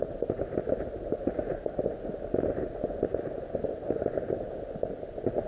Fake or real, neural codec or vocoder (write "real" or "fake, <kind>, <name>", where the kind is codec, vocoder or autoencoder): real